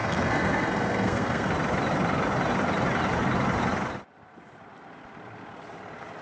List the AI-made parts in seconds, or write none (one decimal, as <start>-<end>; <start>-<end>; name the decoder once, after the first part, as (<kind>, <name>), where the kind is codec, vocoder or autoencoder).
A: 0.0-1.5 (codec, SNAC)

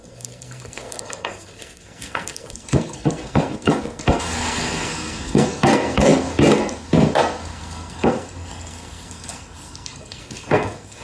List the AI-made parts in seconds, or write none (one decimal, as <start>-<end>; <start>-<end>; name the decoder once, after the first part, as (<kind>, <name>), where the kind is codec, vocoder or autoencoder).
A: 0.0-11.0 (codec, SNAC)

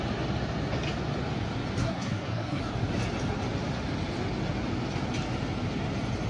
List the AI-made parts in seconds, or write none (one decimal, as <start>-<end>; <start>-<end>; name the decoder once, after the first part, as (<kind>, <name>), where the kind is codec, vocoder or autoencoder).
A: 1.8-2.6 (codec, SNAC)

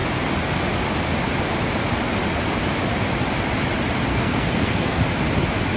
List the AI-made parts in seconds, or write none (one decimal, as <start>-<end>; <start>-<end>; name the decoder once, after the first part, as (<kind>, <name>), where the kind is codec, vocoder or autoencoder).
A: 4.1-5.0 (codec, SNAC)